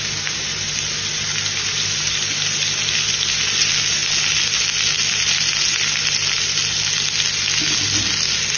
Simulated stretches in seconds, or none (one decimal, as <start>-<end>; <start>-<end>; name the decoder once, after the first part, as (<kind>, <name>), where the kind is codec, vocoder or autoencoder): none